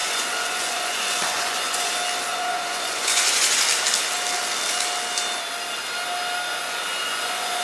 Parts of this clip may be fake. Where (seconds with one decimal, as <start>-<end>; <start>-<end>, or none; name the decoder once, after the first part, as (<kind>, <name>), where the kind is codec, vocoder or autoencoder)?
0.0-1.9 (vocoder, Vocos); 2.3-3.6; 6.5-7.6